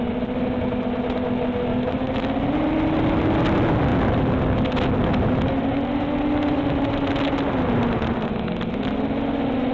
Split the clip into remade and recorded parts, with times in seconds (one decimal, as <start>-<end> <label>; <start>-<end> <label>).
0.0-9.7 recorded